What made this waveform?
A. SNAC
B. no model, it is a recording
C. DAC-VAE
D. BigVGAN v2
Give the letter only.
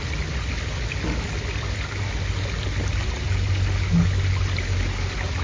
B